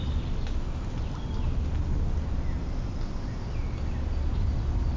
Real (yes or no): yes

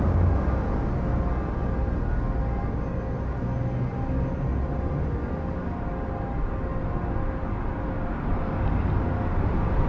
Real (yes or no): yes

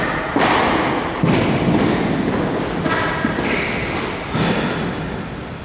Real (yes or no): yes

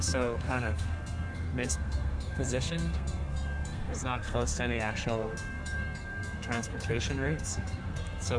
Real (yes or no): no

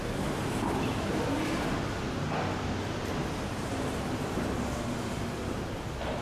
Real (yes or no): yes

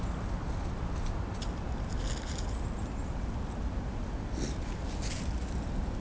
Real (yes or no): yes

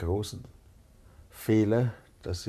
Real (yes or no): yes